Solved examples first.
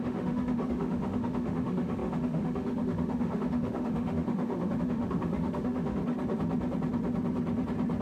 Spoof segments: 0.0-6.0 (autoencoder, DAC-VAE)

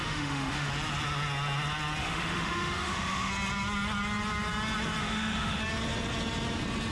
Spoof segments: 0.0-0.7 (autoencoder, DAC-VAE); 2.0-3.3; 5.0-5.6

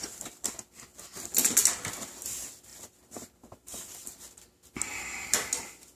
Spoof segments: none